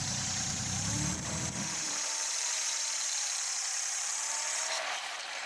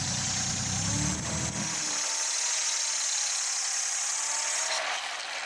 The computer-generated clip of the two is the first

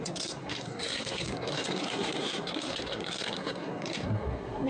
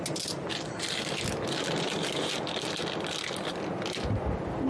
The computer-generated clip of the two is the first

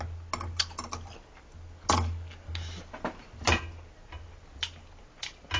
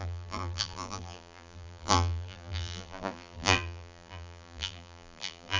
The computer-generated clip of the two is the second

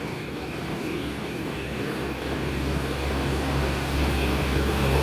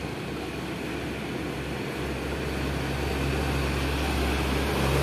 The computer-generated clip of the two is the first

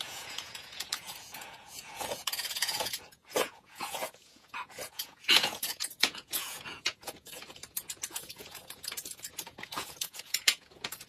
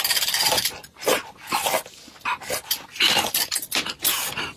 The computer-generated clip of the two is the first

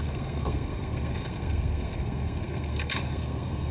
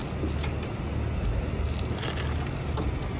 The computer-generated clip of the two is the first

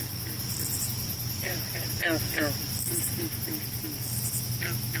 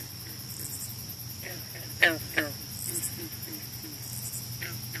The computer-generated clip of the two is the first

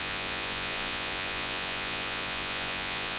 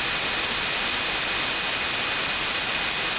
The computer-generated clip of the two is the first